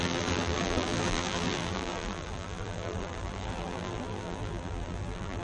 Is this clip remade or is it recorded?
remade